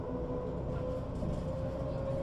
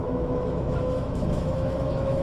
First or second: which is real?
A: first